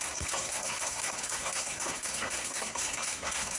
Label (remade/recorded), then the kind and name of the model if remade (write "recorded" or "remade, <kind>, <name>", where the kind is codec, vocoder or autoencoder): remade, codec, SNAC